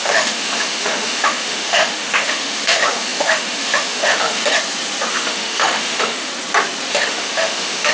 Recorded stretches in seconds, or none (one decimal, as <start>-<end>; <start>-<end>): 4.4-5.1; 6.3-6.9